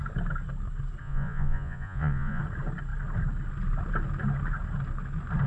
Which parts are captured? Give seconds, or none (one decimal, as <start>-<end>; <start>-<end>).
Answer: 0.0-1.0; 2.4-5.5